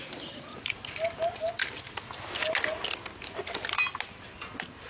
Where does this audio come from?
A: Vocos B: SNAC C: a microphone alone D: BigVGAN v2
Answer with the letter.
C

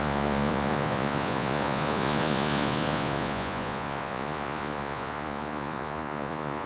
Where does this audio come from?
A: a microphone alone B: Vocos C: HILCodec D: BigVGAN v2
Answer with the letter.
B